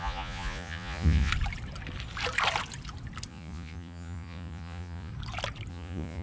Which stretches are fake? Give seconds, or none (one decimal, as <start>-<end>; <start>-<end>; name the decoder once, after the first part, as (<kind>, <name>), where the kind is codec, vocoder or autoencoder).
0.0-1.3 (vocoder, Vocos); 3.3-5.1; 5.7-6.2